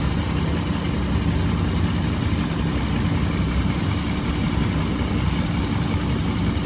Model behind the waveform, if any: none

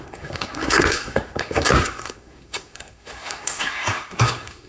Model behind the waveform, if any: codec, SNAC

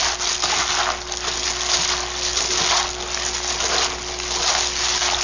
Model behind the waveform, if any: none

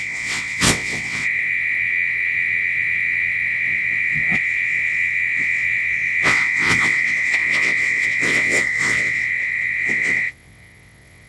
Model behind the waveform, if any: vocoder, WaveNeXt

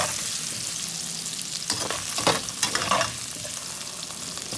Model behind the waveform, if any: none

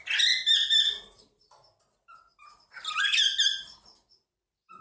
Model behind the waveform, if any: none